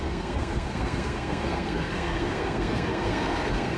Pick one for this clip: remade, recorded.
remade